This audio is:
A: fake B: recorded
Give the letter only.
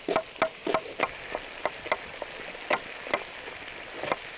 B